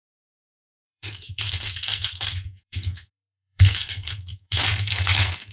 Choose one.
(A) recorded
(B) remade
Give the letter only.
B